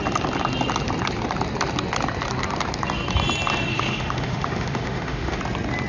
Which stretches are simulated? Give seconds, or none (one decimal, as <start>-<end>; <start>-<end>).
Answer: 3.7-5.4